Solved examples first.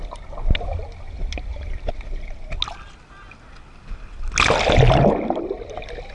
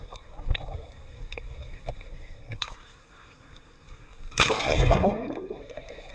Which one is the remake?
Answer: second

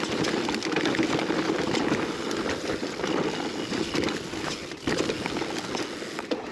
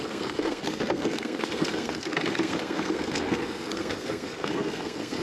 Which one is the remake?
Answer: second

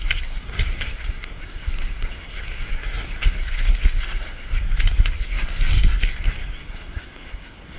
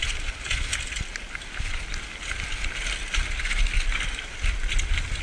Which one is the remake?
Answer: first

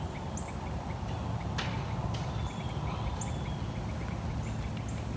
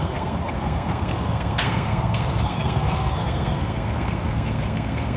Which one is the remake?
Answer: second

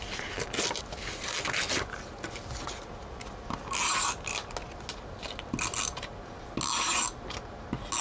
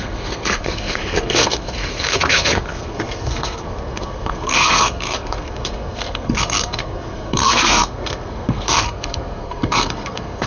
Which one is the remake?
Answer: second